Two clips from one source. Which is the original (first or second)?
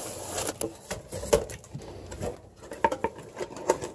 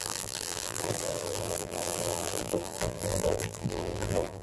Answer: first